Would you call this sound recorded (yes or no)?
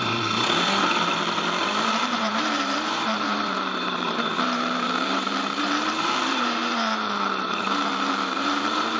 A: no